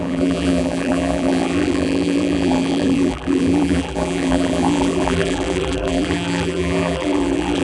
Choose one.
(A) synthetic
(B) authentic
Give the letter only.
A